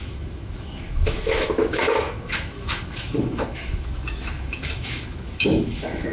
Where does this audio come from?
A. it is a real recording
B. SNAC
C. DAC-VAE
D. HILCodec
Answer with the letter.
C